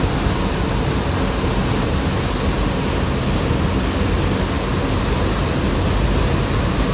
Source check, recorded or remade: recorded